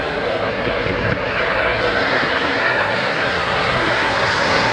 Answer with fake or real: fake